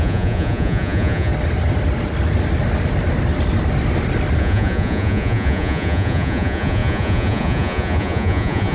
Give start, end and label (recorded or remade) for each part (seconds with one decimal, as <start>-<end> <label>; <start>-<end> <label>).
0.0-1.3 remade; 1.3-4.4 recorded; 4.4-8.7 remade